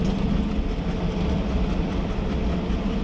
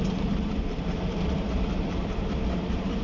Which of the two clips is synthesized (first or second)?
second